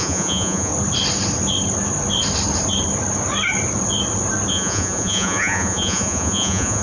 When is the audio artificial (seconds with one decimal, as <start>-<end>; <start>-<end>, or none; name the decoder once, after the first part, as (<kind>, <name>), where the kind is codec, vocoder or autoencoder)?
0.0-0.7 (vocoder, Vocos); 4.5-6.8